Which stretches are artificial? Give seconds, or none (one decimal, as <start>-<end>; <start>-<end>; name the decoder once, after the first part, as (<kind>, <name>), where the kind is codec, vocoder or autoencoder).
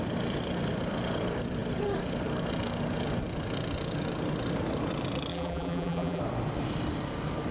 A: 5.3-6.2 (vocoder, BigVGAN v2)